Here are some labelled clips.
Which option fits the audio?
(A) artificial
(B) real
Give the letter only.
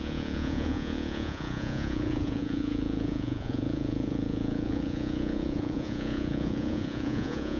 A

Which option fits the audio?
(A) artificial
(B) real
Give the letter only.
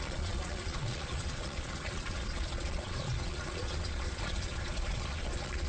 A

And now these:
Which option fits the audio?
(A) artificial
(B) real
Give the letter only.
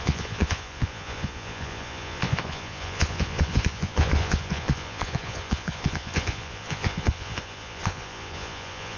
A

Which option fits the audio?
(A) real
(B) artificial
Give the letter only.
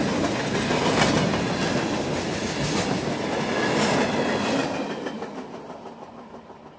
A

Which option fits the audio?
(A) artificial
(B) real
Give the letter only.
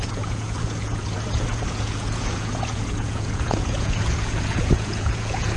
A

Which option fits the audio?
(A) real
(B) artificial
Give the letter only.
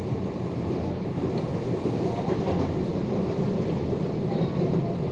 A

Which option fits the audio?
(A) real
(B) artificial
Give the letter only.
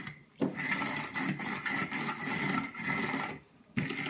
A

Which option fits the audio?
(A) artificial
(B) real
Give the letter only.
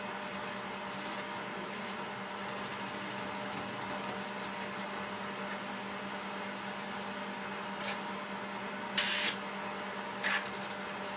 B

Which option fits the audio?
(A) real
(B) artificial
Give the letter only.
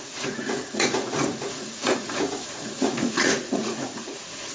B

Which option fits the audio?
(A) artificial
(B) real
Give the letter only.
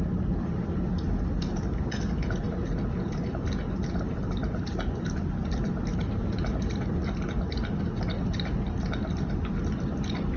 B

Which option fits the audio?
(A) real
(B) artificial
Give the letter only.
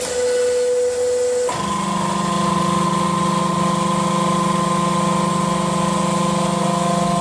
A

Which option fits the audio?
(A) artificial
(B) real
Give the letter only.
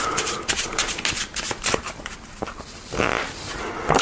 B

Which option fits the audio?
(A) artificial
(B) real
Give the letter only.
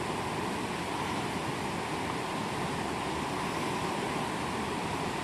B